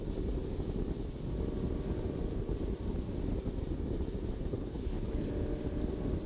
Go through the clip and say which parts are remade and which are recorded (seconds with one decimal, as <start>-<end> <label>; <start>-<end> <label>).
0.0-4.4 recorded; 4.4-5.3 remade; 5.3-6.3 recorded